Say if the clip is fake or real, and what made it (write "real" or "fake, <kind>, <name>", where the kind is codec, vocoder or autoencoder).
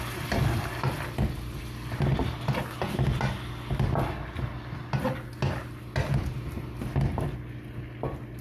real